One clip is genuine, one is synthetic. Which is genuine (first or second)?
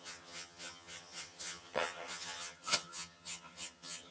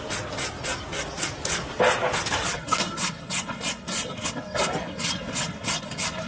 second